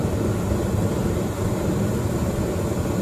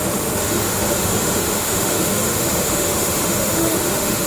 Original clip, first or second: first